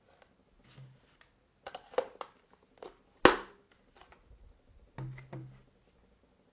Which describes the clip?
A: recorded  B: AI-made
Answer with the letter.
A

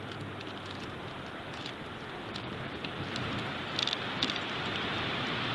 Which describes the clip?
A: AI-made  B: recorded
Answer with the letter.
B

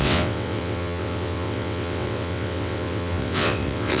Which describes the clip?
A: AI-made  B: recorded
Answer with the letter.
A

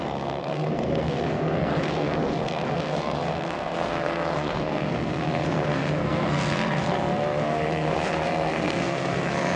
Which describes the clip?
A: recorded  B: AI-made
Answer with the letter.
B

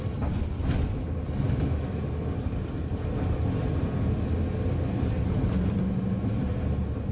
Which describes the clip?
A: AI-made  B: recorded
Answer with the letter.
B